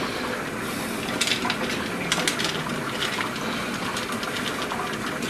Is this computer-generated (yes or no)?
no